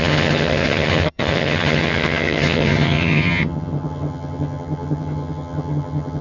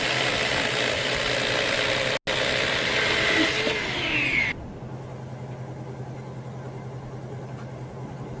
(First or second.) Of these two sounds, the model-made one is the first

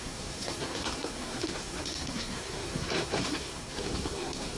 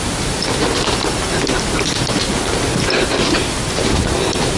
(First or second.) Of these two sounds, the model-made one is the first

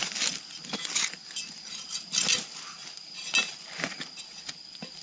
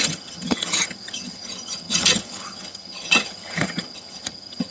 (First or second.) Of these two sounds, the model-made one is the second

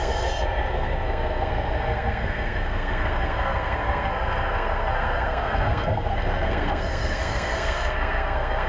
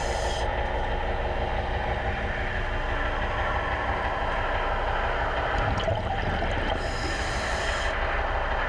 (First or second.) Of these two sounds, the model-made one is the first